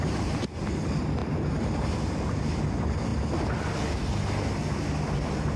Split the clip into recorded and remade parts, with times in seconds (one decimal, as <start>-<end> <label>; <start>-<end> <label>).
0.0-3.1 remade; 3.1-5.1 recorded; 5.1-5.6 remade